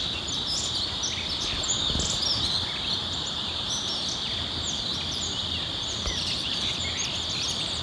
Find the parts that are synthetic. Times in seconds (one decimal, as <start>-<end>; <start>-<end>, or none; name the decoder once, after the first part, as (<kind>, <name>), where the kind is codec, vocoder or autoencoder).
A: none